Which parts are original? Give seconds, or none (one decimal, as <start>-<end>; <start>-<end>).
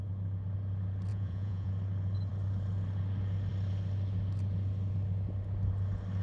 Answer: 0.0-1.1; 1.7-6.2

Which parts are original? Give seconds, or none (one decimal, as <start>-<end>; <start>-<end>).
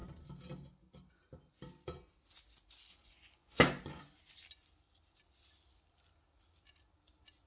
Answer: 0.0-2.9; 3.6-7.5